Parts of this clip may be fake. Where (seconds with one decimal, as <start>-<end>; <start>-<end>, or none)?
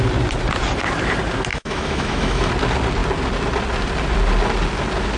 1.5-2.5